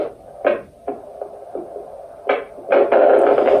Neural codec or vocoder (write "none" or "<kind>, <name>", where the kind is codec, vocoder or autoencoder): none